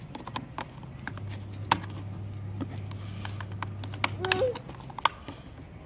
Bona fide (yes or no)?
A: yes